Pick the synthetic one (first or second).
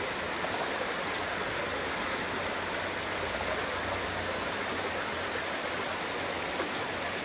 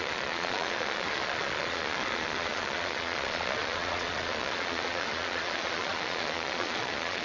second